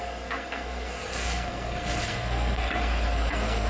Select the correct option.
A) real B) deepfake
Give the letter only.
B